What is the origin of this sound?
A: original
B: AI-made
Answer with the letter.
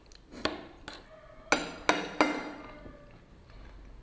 A